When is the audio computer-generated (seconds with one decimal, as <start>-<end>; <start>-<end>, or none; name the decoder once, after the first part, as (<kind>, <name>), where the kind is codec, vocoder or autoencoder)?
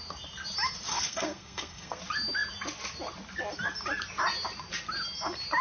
0.9-2.0 (codec, SNAC)